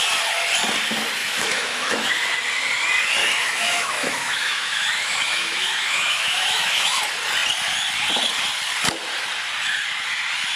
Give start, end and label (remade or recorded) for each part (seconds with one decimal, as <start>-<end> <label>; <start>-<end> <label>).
0.0-1.2 recorded; 1.2-2.1 remade; 2.1-3.2 recorded; 3.2-7.0 remade; 7.0-10.6 recorded